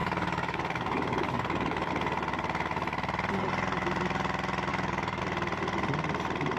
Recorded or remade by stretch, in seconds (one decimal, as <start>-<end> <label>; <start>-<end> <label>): 0.0-1.9 remade; 1.9-4.7 recorded; 4.7-5.2 remade; 5.2-6.6 recorded